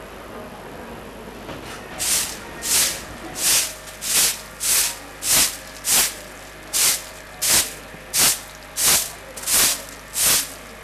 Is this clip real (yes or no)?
yes